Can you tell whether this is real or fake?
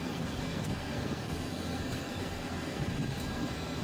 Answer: fake